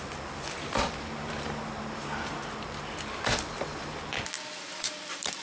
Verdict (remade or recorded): remade